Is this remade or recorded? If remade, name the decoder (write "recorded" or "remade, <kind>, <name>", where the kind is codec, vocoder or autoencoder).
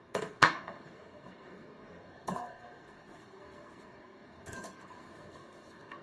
remade, codec, SNAC